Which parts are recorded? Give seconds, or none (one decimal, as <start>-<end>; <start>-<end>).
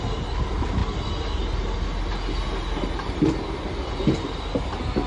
0.0-5.1